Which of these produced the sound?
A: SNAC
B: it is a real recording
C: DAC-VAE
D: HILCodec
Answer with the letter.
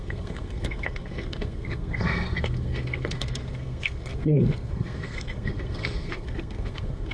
A